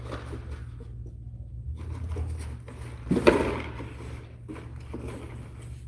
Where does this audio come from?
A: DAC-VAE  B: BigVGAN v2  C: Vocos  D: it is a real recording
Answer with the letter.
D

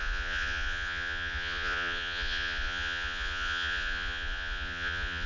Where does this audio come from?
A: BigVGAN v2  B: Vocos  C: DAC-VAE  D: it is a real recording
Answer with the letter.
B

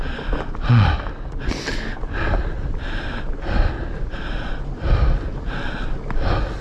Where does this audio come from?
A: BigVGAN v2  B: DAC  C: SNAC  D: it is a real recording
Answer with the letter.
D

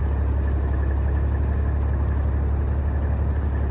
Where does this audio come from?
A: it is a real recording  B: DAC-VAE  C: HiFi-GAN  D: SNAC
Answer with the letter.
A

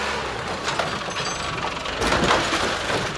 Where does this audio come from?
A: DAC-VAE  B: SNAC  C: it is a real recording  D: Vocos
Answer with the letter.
C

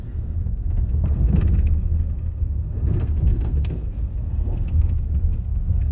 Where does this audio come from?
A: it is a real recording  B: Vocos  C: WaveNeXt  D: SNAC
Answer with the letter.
D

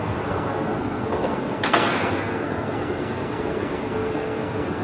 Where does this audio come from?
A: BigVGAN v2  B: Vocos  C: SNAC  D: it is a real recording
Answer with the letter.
C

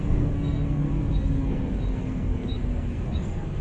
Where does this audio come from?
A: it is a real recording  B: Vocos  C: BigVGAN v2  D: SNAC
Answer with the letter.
D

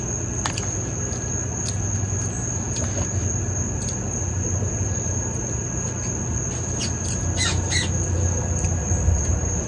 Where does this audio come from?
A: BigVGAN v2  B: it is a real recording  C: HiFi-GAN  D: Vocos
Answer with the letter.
B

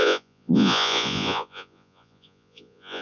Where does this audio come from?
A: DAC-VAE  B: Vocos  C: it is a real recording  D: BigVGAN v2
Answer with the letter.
B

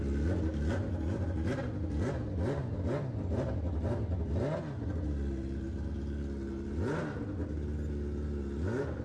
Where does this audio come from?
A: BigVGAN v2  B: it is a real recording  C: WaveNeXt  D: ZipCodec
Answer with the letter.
B